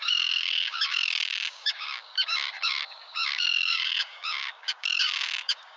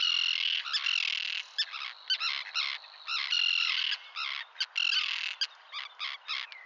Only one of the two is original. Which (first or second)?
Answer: second